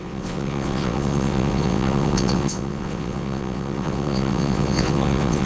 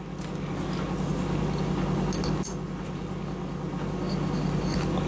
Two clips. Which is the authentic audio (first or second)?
second